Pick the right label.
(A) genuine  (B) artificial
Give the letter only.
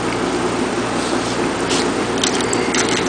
A